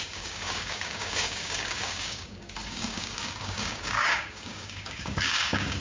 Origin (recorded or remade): remade